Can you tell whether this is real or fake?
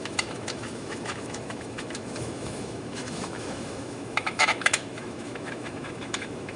fake